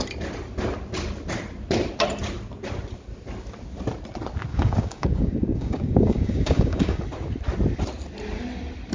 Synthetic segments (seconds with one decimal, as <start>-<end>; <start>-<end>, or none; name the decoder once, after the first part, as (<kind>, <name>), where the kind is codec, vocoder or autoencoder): 4.5-7.0 (codec, DAC)